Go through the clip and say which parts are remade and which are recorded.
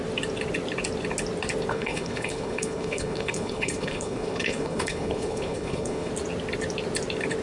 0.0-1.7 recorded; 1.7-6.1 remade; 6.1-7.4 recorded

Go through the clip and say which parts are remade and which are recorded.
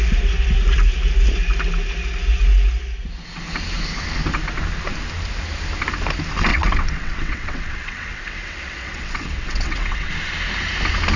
0.0-6.5 recorded; 6.5-10.1 remade; 10.1-11.2 recorded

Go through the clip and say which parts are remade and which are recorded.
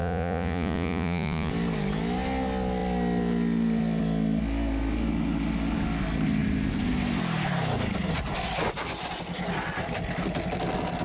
0.0-1.5 remade; 1.5-11.0 recorded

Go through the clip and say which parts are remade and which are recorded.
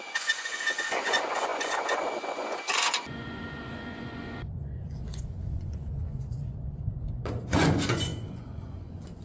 0.0-9.2 remade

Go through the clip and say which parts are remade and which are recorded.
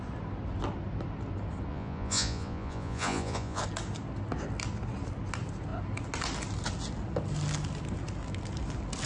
0.0-1.7 recorded; 1.7-3.6 remade; 3.6-9.1 recorded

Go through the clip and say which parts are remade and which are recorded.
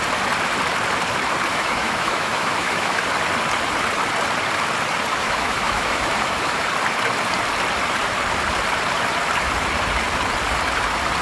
0.0-1.5 recorded; 1.5-3.0 remade; 3.0-5.1 recorded; 5.1-6.7 remade; 6.7-11.2 recorded